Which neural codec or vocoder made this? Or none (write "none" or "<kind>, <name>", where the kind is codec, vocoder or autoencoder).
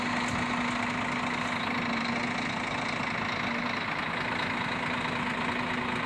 none